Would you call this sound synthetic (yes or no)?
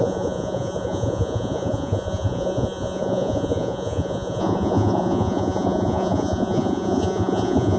yes